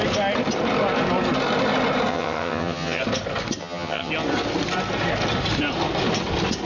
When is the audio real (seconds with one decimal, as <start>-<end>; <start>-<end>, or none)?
0.0-2.1; 3.0-3.6; 4.1-6.6